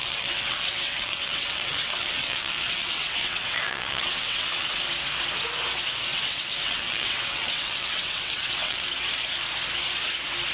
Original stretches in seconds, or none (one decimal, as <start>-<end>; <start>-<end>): 4.8-6.1; 8.9-10.5